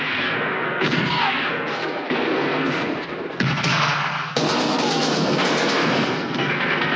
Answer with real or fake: fake